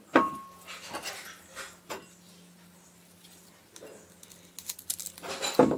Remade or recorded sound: recorded